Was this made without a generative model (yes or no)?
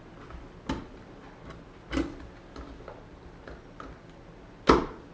yes